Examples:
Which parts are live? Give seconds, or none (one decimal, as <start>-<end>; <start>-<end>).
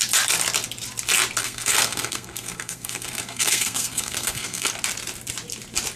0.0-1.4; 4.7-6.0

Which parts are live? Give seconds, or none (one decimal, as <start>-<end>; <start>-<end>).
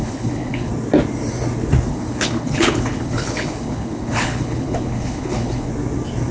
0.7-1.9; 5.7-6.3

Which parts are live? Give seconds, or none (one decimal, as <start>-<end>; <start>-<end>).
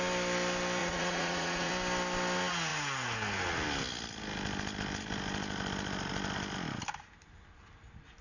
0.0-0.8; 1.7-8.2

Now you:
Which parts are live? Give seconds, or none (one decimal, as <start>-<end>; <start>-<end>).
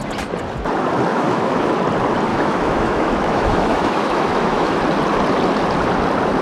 0.0-1.1; 1.8-2.3; 4.8-6.4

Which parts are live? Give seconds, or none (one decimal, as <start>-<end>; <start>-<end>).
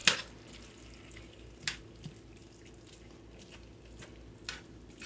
0.0-5.1